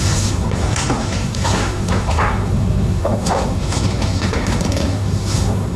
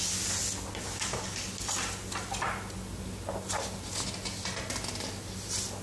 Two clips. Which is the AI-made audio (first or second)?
first